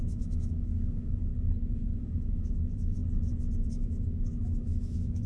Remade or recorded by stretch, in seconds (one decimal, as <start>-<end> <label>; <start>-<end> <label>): 0.0-1.3 remade; 1.3-2.0 recorded; 2.0-3.0 remade; 3.0-3.7 recorded; 3.7-5.3 remade